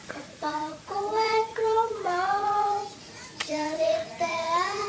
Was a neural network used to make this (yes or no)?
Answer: yes